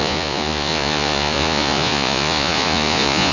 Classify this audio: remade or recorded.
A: remade